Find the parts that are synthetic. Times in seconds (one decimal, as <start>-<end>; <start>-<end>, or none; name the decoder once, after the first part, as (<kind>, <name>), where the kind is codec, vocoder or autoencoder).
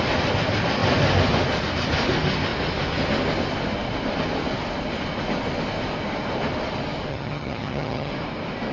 7.1-8.1 (vocoder, HiFi-GAN)